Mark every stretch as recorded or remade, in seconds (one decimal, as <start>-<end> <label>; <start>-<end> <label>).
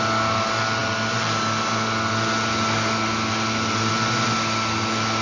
0.0-5.2 recorded